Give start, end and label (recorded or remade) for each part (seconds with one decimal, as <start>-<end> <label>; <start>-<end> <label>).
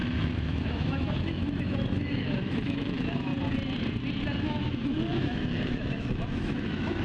0.0-3.3 remade; 3.3-4.4 recorded; 4.4-7.0 remade